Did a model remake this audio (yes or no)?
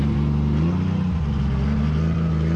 no